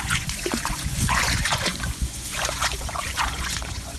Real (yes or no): no